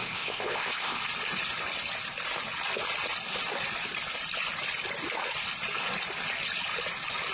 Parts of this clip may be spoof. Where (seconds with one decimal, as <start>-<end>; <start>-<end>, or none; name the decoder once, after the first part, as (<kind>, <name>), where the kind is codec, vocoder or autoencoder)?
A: 0.0-1.0 (codec, ZipCodec)